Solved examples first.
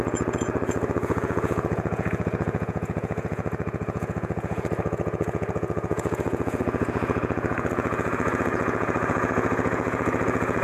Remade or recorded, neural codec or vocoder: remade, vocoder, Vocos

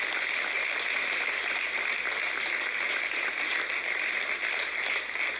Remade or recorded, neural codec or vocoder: recorded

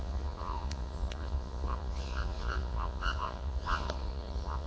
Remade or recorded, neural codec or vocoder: remade, vocoder, Vocos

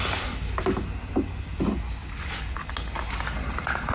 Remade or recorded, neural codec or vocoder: recorded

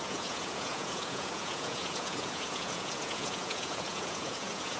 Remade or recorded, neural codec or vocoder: remade, vocoder, Vocos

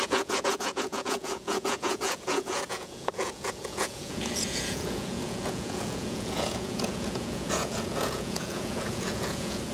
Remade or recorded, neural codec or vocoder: remade, vocoder, Vocos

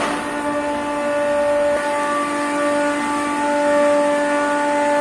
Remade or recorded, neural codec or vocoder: recorded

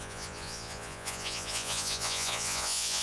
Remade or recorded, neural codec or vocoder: remade, vocoder, Vocos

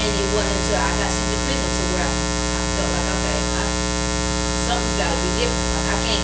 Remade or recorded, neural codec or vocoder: recorded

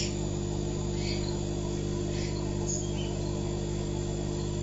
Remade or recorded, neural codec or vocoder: recorded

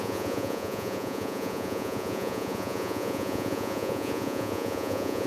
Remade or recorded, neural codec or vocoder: remade, vocoder, Vocos